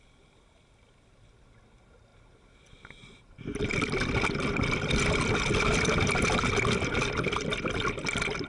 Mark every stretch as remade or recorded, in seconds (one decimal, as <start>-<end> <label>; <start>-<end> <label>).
0.0-8.5 recorded